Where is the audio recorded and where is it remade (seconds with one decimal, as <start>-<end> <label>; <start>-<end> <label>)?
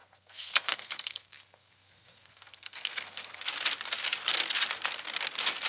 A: 0.0-3.4 remade; 3.4-5.7 recorded